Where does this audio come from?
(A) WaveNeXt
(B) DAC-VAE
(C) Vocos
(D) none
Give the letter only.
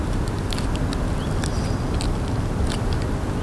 D